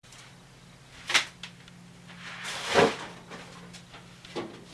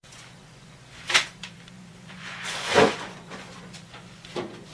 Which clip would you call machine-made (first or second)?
second